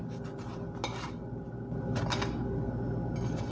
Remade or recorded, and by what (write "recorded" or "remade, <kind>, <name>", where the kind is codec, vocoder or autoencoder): recorded